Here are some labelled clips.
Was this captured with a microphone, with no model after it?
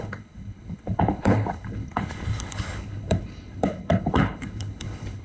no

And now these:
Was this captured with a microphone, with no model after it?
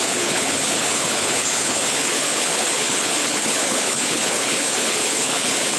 no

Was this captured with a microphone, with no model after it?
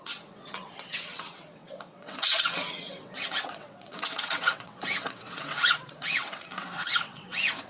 no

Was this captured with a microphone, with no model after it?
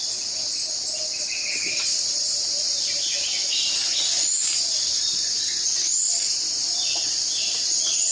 yes